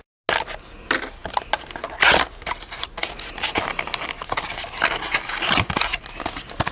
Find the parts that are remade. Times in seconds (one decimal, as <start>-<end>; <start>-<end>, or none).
none